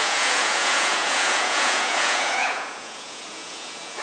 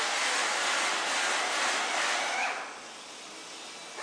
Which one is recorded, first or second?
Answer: second